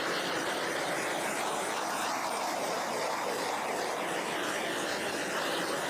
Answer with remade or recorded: recorded